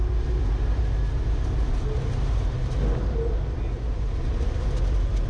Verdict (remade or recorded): recorded